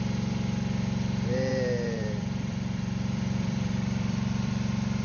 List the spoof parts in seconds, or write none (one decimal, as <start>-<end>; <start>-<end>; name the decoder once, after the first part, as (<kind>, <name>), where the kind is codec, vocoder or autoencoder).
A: 1.5-4.5 (vocoder, BigVGAN v2)